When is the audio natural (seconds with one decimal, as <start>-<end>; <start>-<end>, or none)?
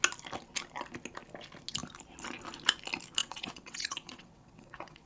0.0-3.2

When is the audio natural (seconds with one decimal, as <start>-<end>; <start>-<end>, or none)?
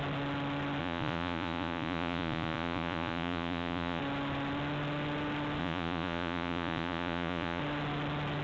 0.0-0.8; 4.0-5.6; 7.6-8.4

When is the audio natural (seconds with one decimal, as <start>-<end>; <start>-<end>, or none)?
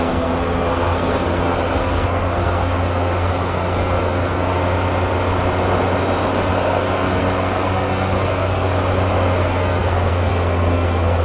4.6-6.3; 8.7-9.4